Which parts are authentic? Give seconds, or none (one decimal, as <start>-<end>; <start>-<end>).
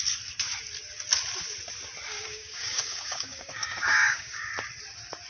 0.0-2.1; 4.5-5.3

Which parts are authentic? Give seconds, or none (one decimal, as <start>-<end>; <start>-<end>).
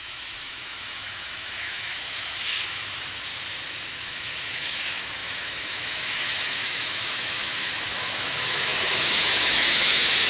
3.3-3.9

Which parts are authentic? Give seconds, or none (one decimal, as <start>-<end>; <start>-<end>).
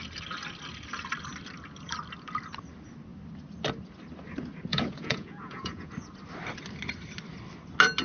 0.0-4.7; 5.9-8.0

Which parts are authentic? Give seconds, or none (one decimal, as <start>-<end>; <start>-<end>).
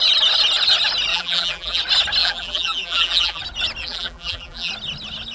0.0-1.1; 1.8-2.2; 3.4-3.8; 4.7-5.3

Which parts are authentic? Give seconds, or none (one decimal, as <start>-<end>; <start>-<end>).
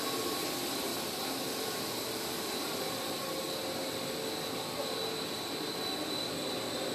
0.0-6.9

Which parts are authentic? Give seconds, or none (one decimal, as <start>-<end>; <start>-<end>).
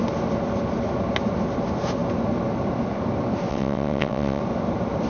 0.0-3.5; 4.4-5.1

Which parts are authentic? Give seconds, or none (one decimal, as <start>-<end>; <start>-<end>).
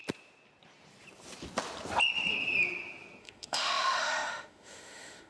0.0-3.2